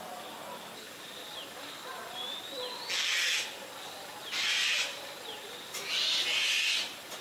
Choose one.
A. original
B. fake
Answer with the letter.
A